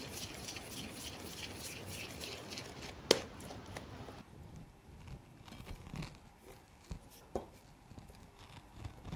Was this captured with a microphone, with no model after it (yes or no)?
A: yes